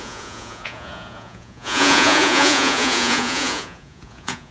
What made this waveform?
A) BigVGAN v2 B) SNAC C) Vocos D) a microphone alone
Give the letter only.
C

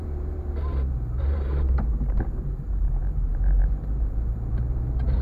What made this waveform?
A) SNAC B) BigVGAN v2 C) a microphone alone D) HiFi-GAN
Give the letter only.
B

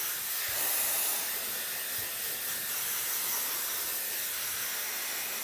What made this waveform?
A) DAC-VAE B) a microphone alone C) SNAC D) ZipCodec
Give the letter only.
B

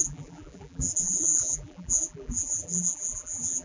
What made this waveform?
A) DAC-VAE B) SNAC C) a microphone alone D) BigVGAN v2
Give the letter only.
D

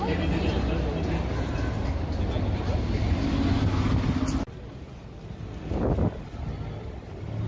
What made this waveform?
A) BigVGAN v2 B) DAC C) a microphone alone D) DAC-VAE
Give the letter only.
C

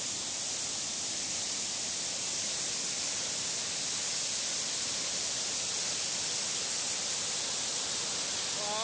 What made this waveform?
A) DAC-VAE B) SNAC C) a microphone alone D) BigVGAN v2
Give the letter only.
C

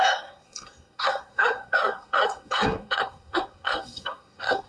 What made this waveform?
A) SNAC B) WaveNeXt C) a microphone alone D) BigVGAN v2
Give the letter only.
A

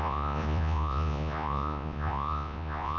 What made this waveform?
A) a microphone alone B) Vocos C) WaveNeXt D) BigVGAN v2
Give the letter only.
B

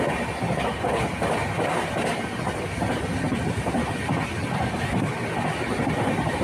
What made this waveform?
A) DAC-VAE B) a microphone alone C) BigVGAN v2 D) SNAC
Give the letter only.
B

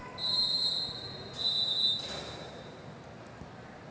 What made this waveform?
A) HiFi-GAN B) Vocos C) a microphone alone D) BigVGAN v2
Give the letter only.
C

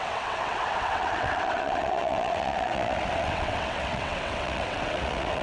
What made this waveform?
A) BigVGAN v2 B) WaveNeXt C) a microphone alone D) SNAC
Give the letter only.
B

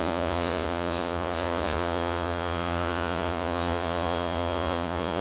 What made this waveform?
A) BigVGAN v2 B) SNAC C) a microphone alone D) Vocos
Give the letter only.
D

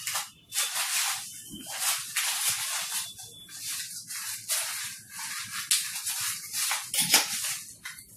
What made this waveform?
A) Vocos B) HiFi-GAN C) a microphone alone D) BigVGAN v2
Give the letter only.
C